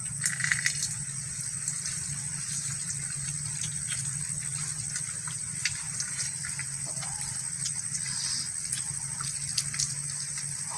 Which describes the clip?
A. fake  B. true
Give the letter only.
B